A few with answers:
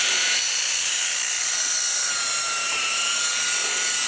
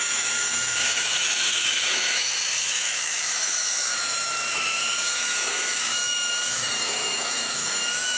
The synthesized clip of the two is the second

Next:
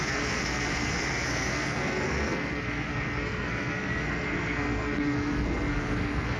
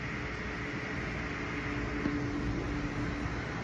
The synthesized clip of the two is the first